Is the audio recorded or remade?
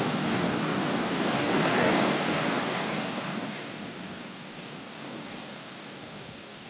remade